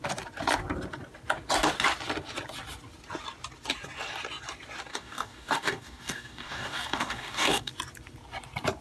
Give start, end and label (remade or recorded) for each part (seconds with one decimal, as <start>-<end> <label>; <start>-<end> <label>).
0.0-4.9 recorded; 4.9-7.7 remade; 7.7-8.8 recorded